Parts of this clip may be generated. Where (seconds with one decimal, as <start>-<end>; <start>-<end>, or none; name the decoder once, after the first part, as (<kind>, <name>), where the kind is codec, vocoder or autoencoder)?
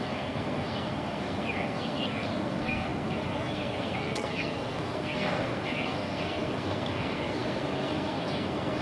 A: 0.0-8.8 (codec, SNAC)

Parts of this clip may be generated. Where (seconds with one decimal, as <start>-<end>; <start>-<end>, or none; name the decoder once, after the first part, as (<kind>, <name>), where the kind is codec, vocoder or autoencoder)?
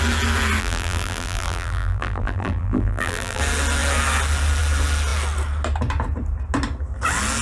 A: 0.6-3.4 (vocoder, BigVGAN v2)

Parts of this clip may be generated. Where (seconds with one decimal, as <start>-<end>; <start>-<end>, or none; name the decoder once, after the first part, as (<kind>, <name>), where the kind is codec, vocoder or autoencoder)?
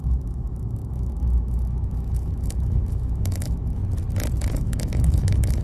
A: 0.0-3.8 (autoencoder, DAC-VAE); 4.5-5.6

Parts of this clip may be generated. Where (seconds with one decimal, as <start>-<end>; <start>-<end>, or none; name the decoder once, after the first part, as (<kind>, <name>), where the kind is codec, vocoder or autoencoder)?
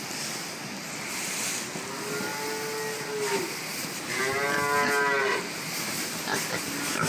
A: none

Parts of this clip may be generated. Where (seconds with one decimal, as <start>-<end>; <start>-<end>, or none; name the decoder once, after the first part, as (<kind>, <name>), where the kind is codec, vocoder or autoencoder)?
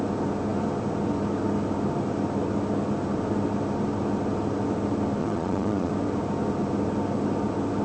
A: 5.2-5.9 (vocoder, Vocos)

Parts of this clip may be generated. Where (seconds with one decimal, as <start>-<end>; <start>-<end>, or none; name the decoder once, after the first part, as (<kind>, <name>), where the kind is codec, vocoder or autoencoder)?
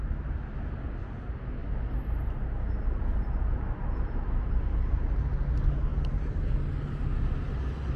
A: none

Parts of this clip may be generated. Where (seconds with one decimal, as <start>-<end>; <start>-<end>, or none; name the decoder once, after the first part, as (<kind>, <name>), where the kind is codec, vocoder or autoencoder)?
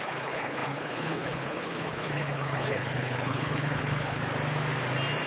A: 0.0-4.2 (codec, HILCodec)